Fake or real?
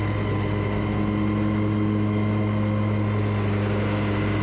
real